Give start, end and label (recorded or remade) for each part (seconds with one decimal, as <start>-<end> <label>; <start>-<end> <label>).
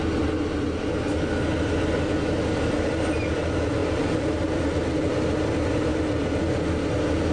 0.0-3.8 recorded; 3.8-5.2 remade; 5.2-7.3 recorded